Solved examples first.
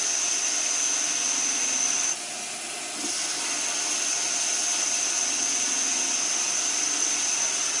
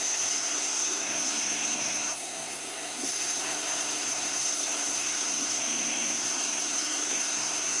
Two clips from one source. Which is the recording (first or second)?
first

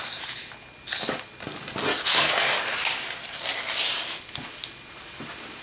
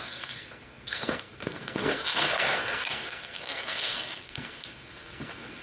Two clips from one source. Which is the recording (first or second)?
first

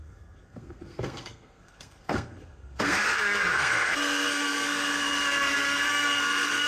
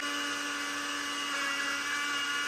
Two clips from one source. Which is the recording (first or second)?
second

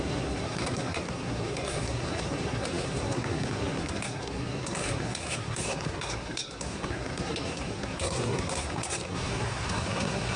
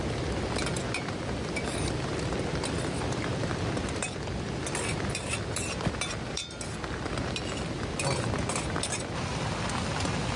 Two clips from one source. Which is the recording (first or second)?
second